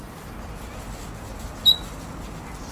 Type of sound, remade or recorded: recorded